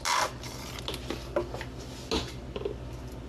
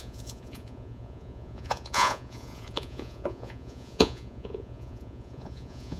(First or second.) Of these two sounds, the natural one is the first